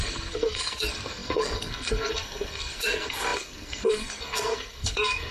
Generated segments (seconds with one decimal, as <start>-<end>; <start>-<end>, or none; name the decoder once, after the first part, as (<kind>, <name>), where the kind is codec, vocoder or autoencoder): 0.0-5.3 (codec, SNAC)

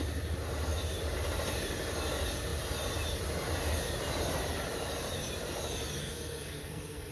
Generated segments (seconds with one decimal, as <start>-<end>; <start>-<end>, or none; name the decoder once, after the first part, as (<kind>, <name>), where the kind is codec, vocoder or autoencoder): 6.0-7.1 (codec, SNAC)

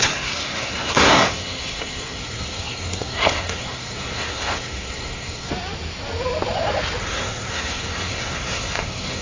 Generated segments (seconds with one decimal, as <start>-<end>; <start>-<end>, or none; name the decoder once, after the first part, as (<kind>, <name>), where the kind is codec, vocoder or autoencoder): 0.0-5.5 (codec, SNAC); 7.0-9.2

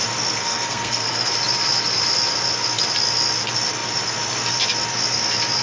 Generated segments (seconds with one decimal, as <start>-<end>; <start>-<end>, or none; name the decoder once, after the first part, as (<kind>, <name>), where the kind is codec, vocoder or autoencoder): 0.4-1.3 (codec, SNAC)

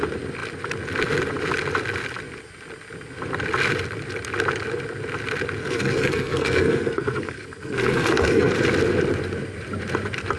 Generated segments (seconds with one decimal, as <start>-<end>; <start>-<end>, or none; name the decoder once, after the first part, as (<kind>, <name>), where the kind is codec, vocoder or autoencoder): 5.6-8.5 (codec, SNAC)

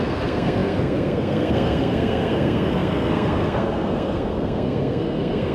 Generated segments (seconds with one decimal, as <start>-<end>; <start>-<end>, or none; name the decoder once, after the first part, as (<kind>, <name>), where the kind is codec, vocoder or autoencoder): 0.0-5.5 (codec, SNAC)

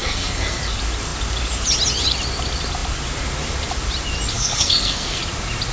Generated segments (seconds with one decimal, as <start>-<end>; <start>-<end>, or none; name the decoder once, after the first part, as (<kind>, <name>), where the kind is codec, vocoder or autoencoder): 0.0-0.6 (codec, SNAC); 4.3-5.2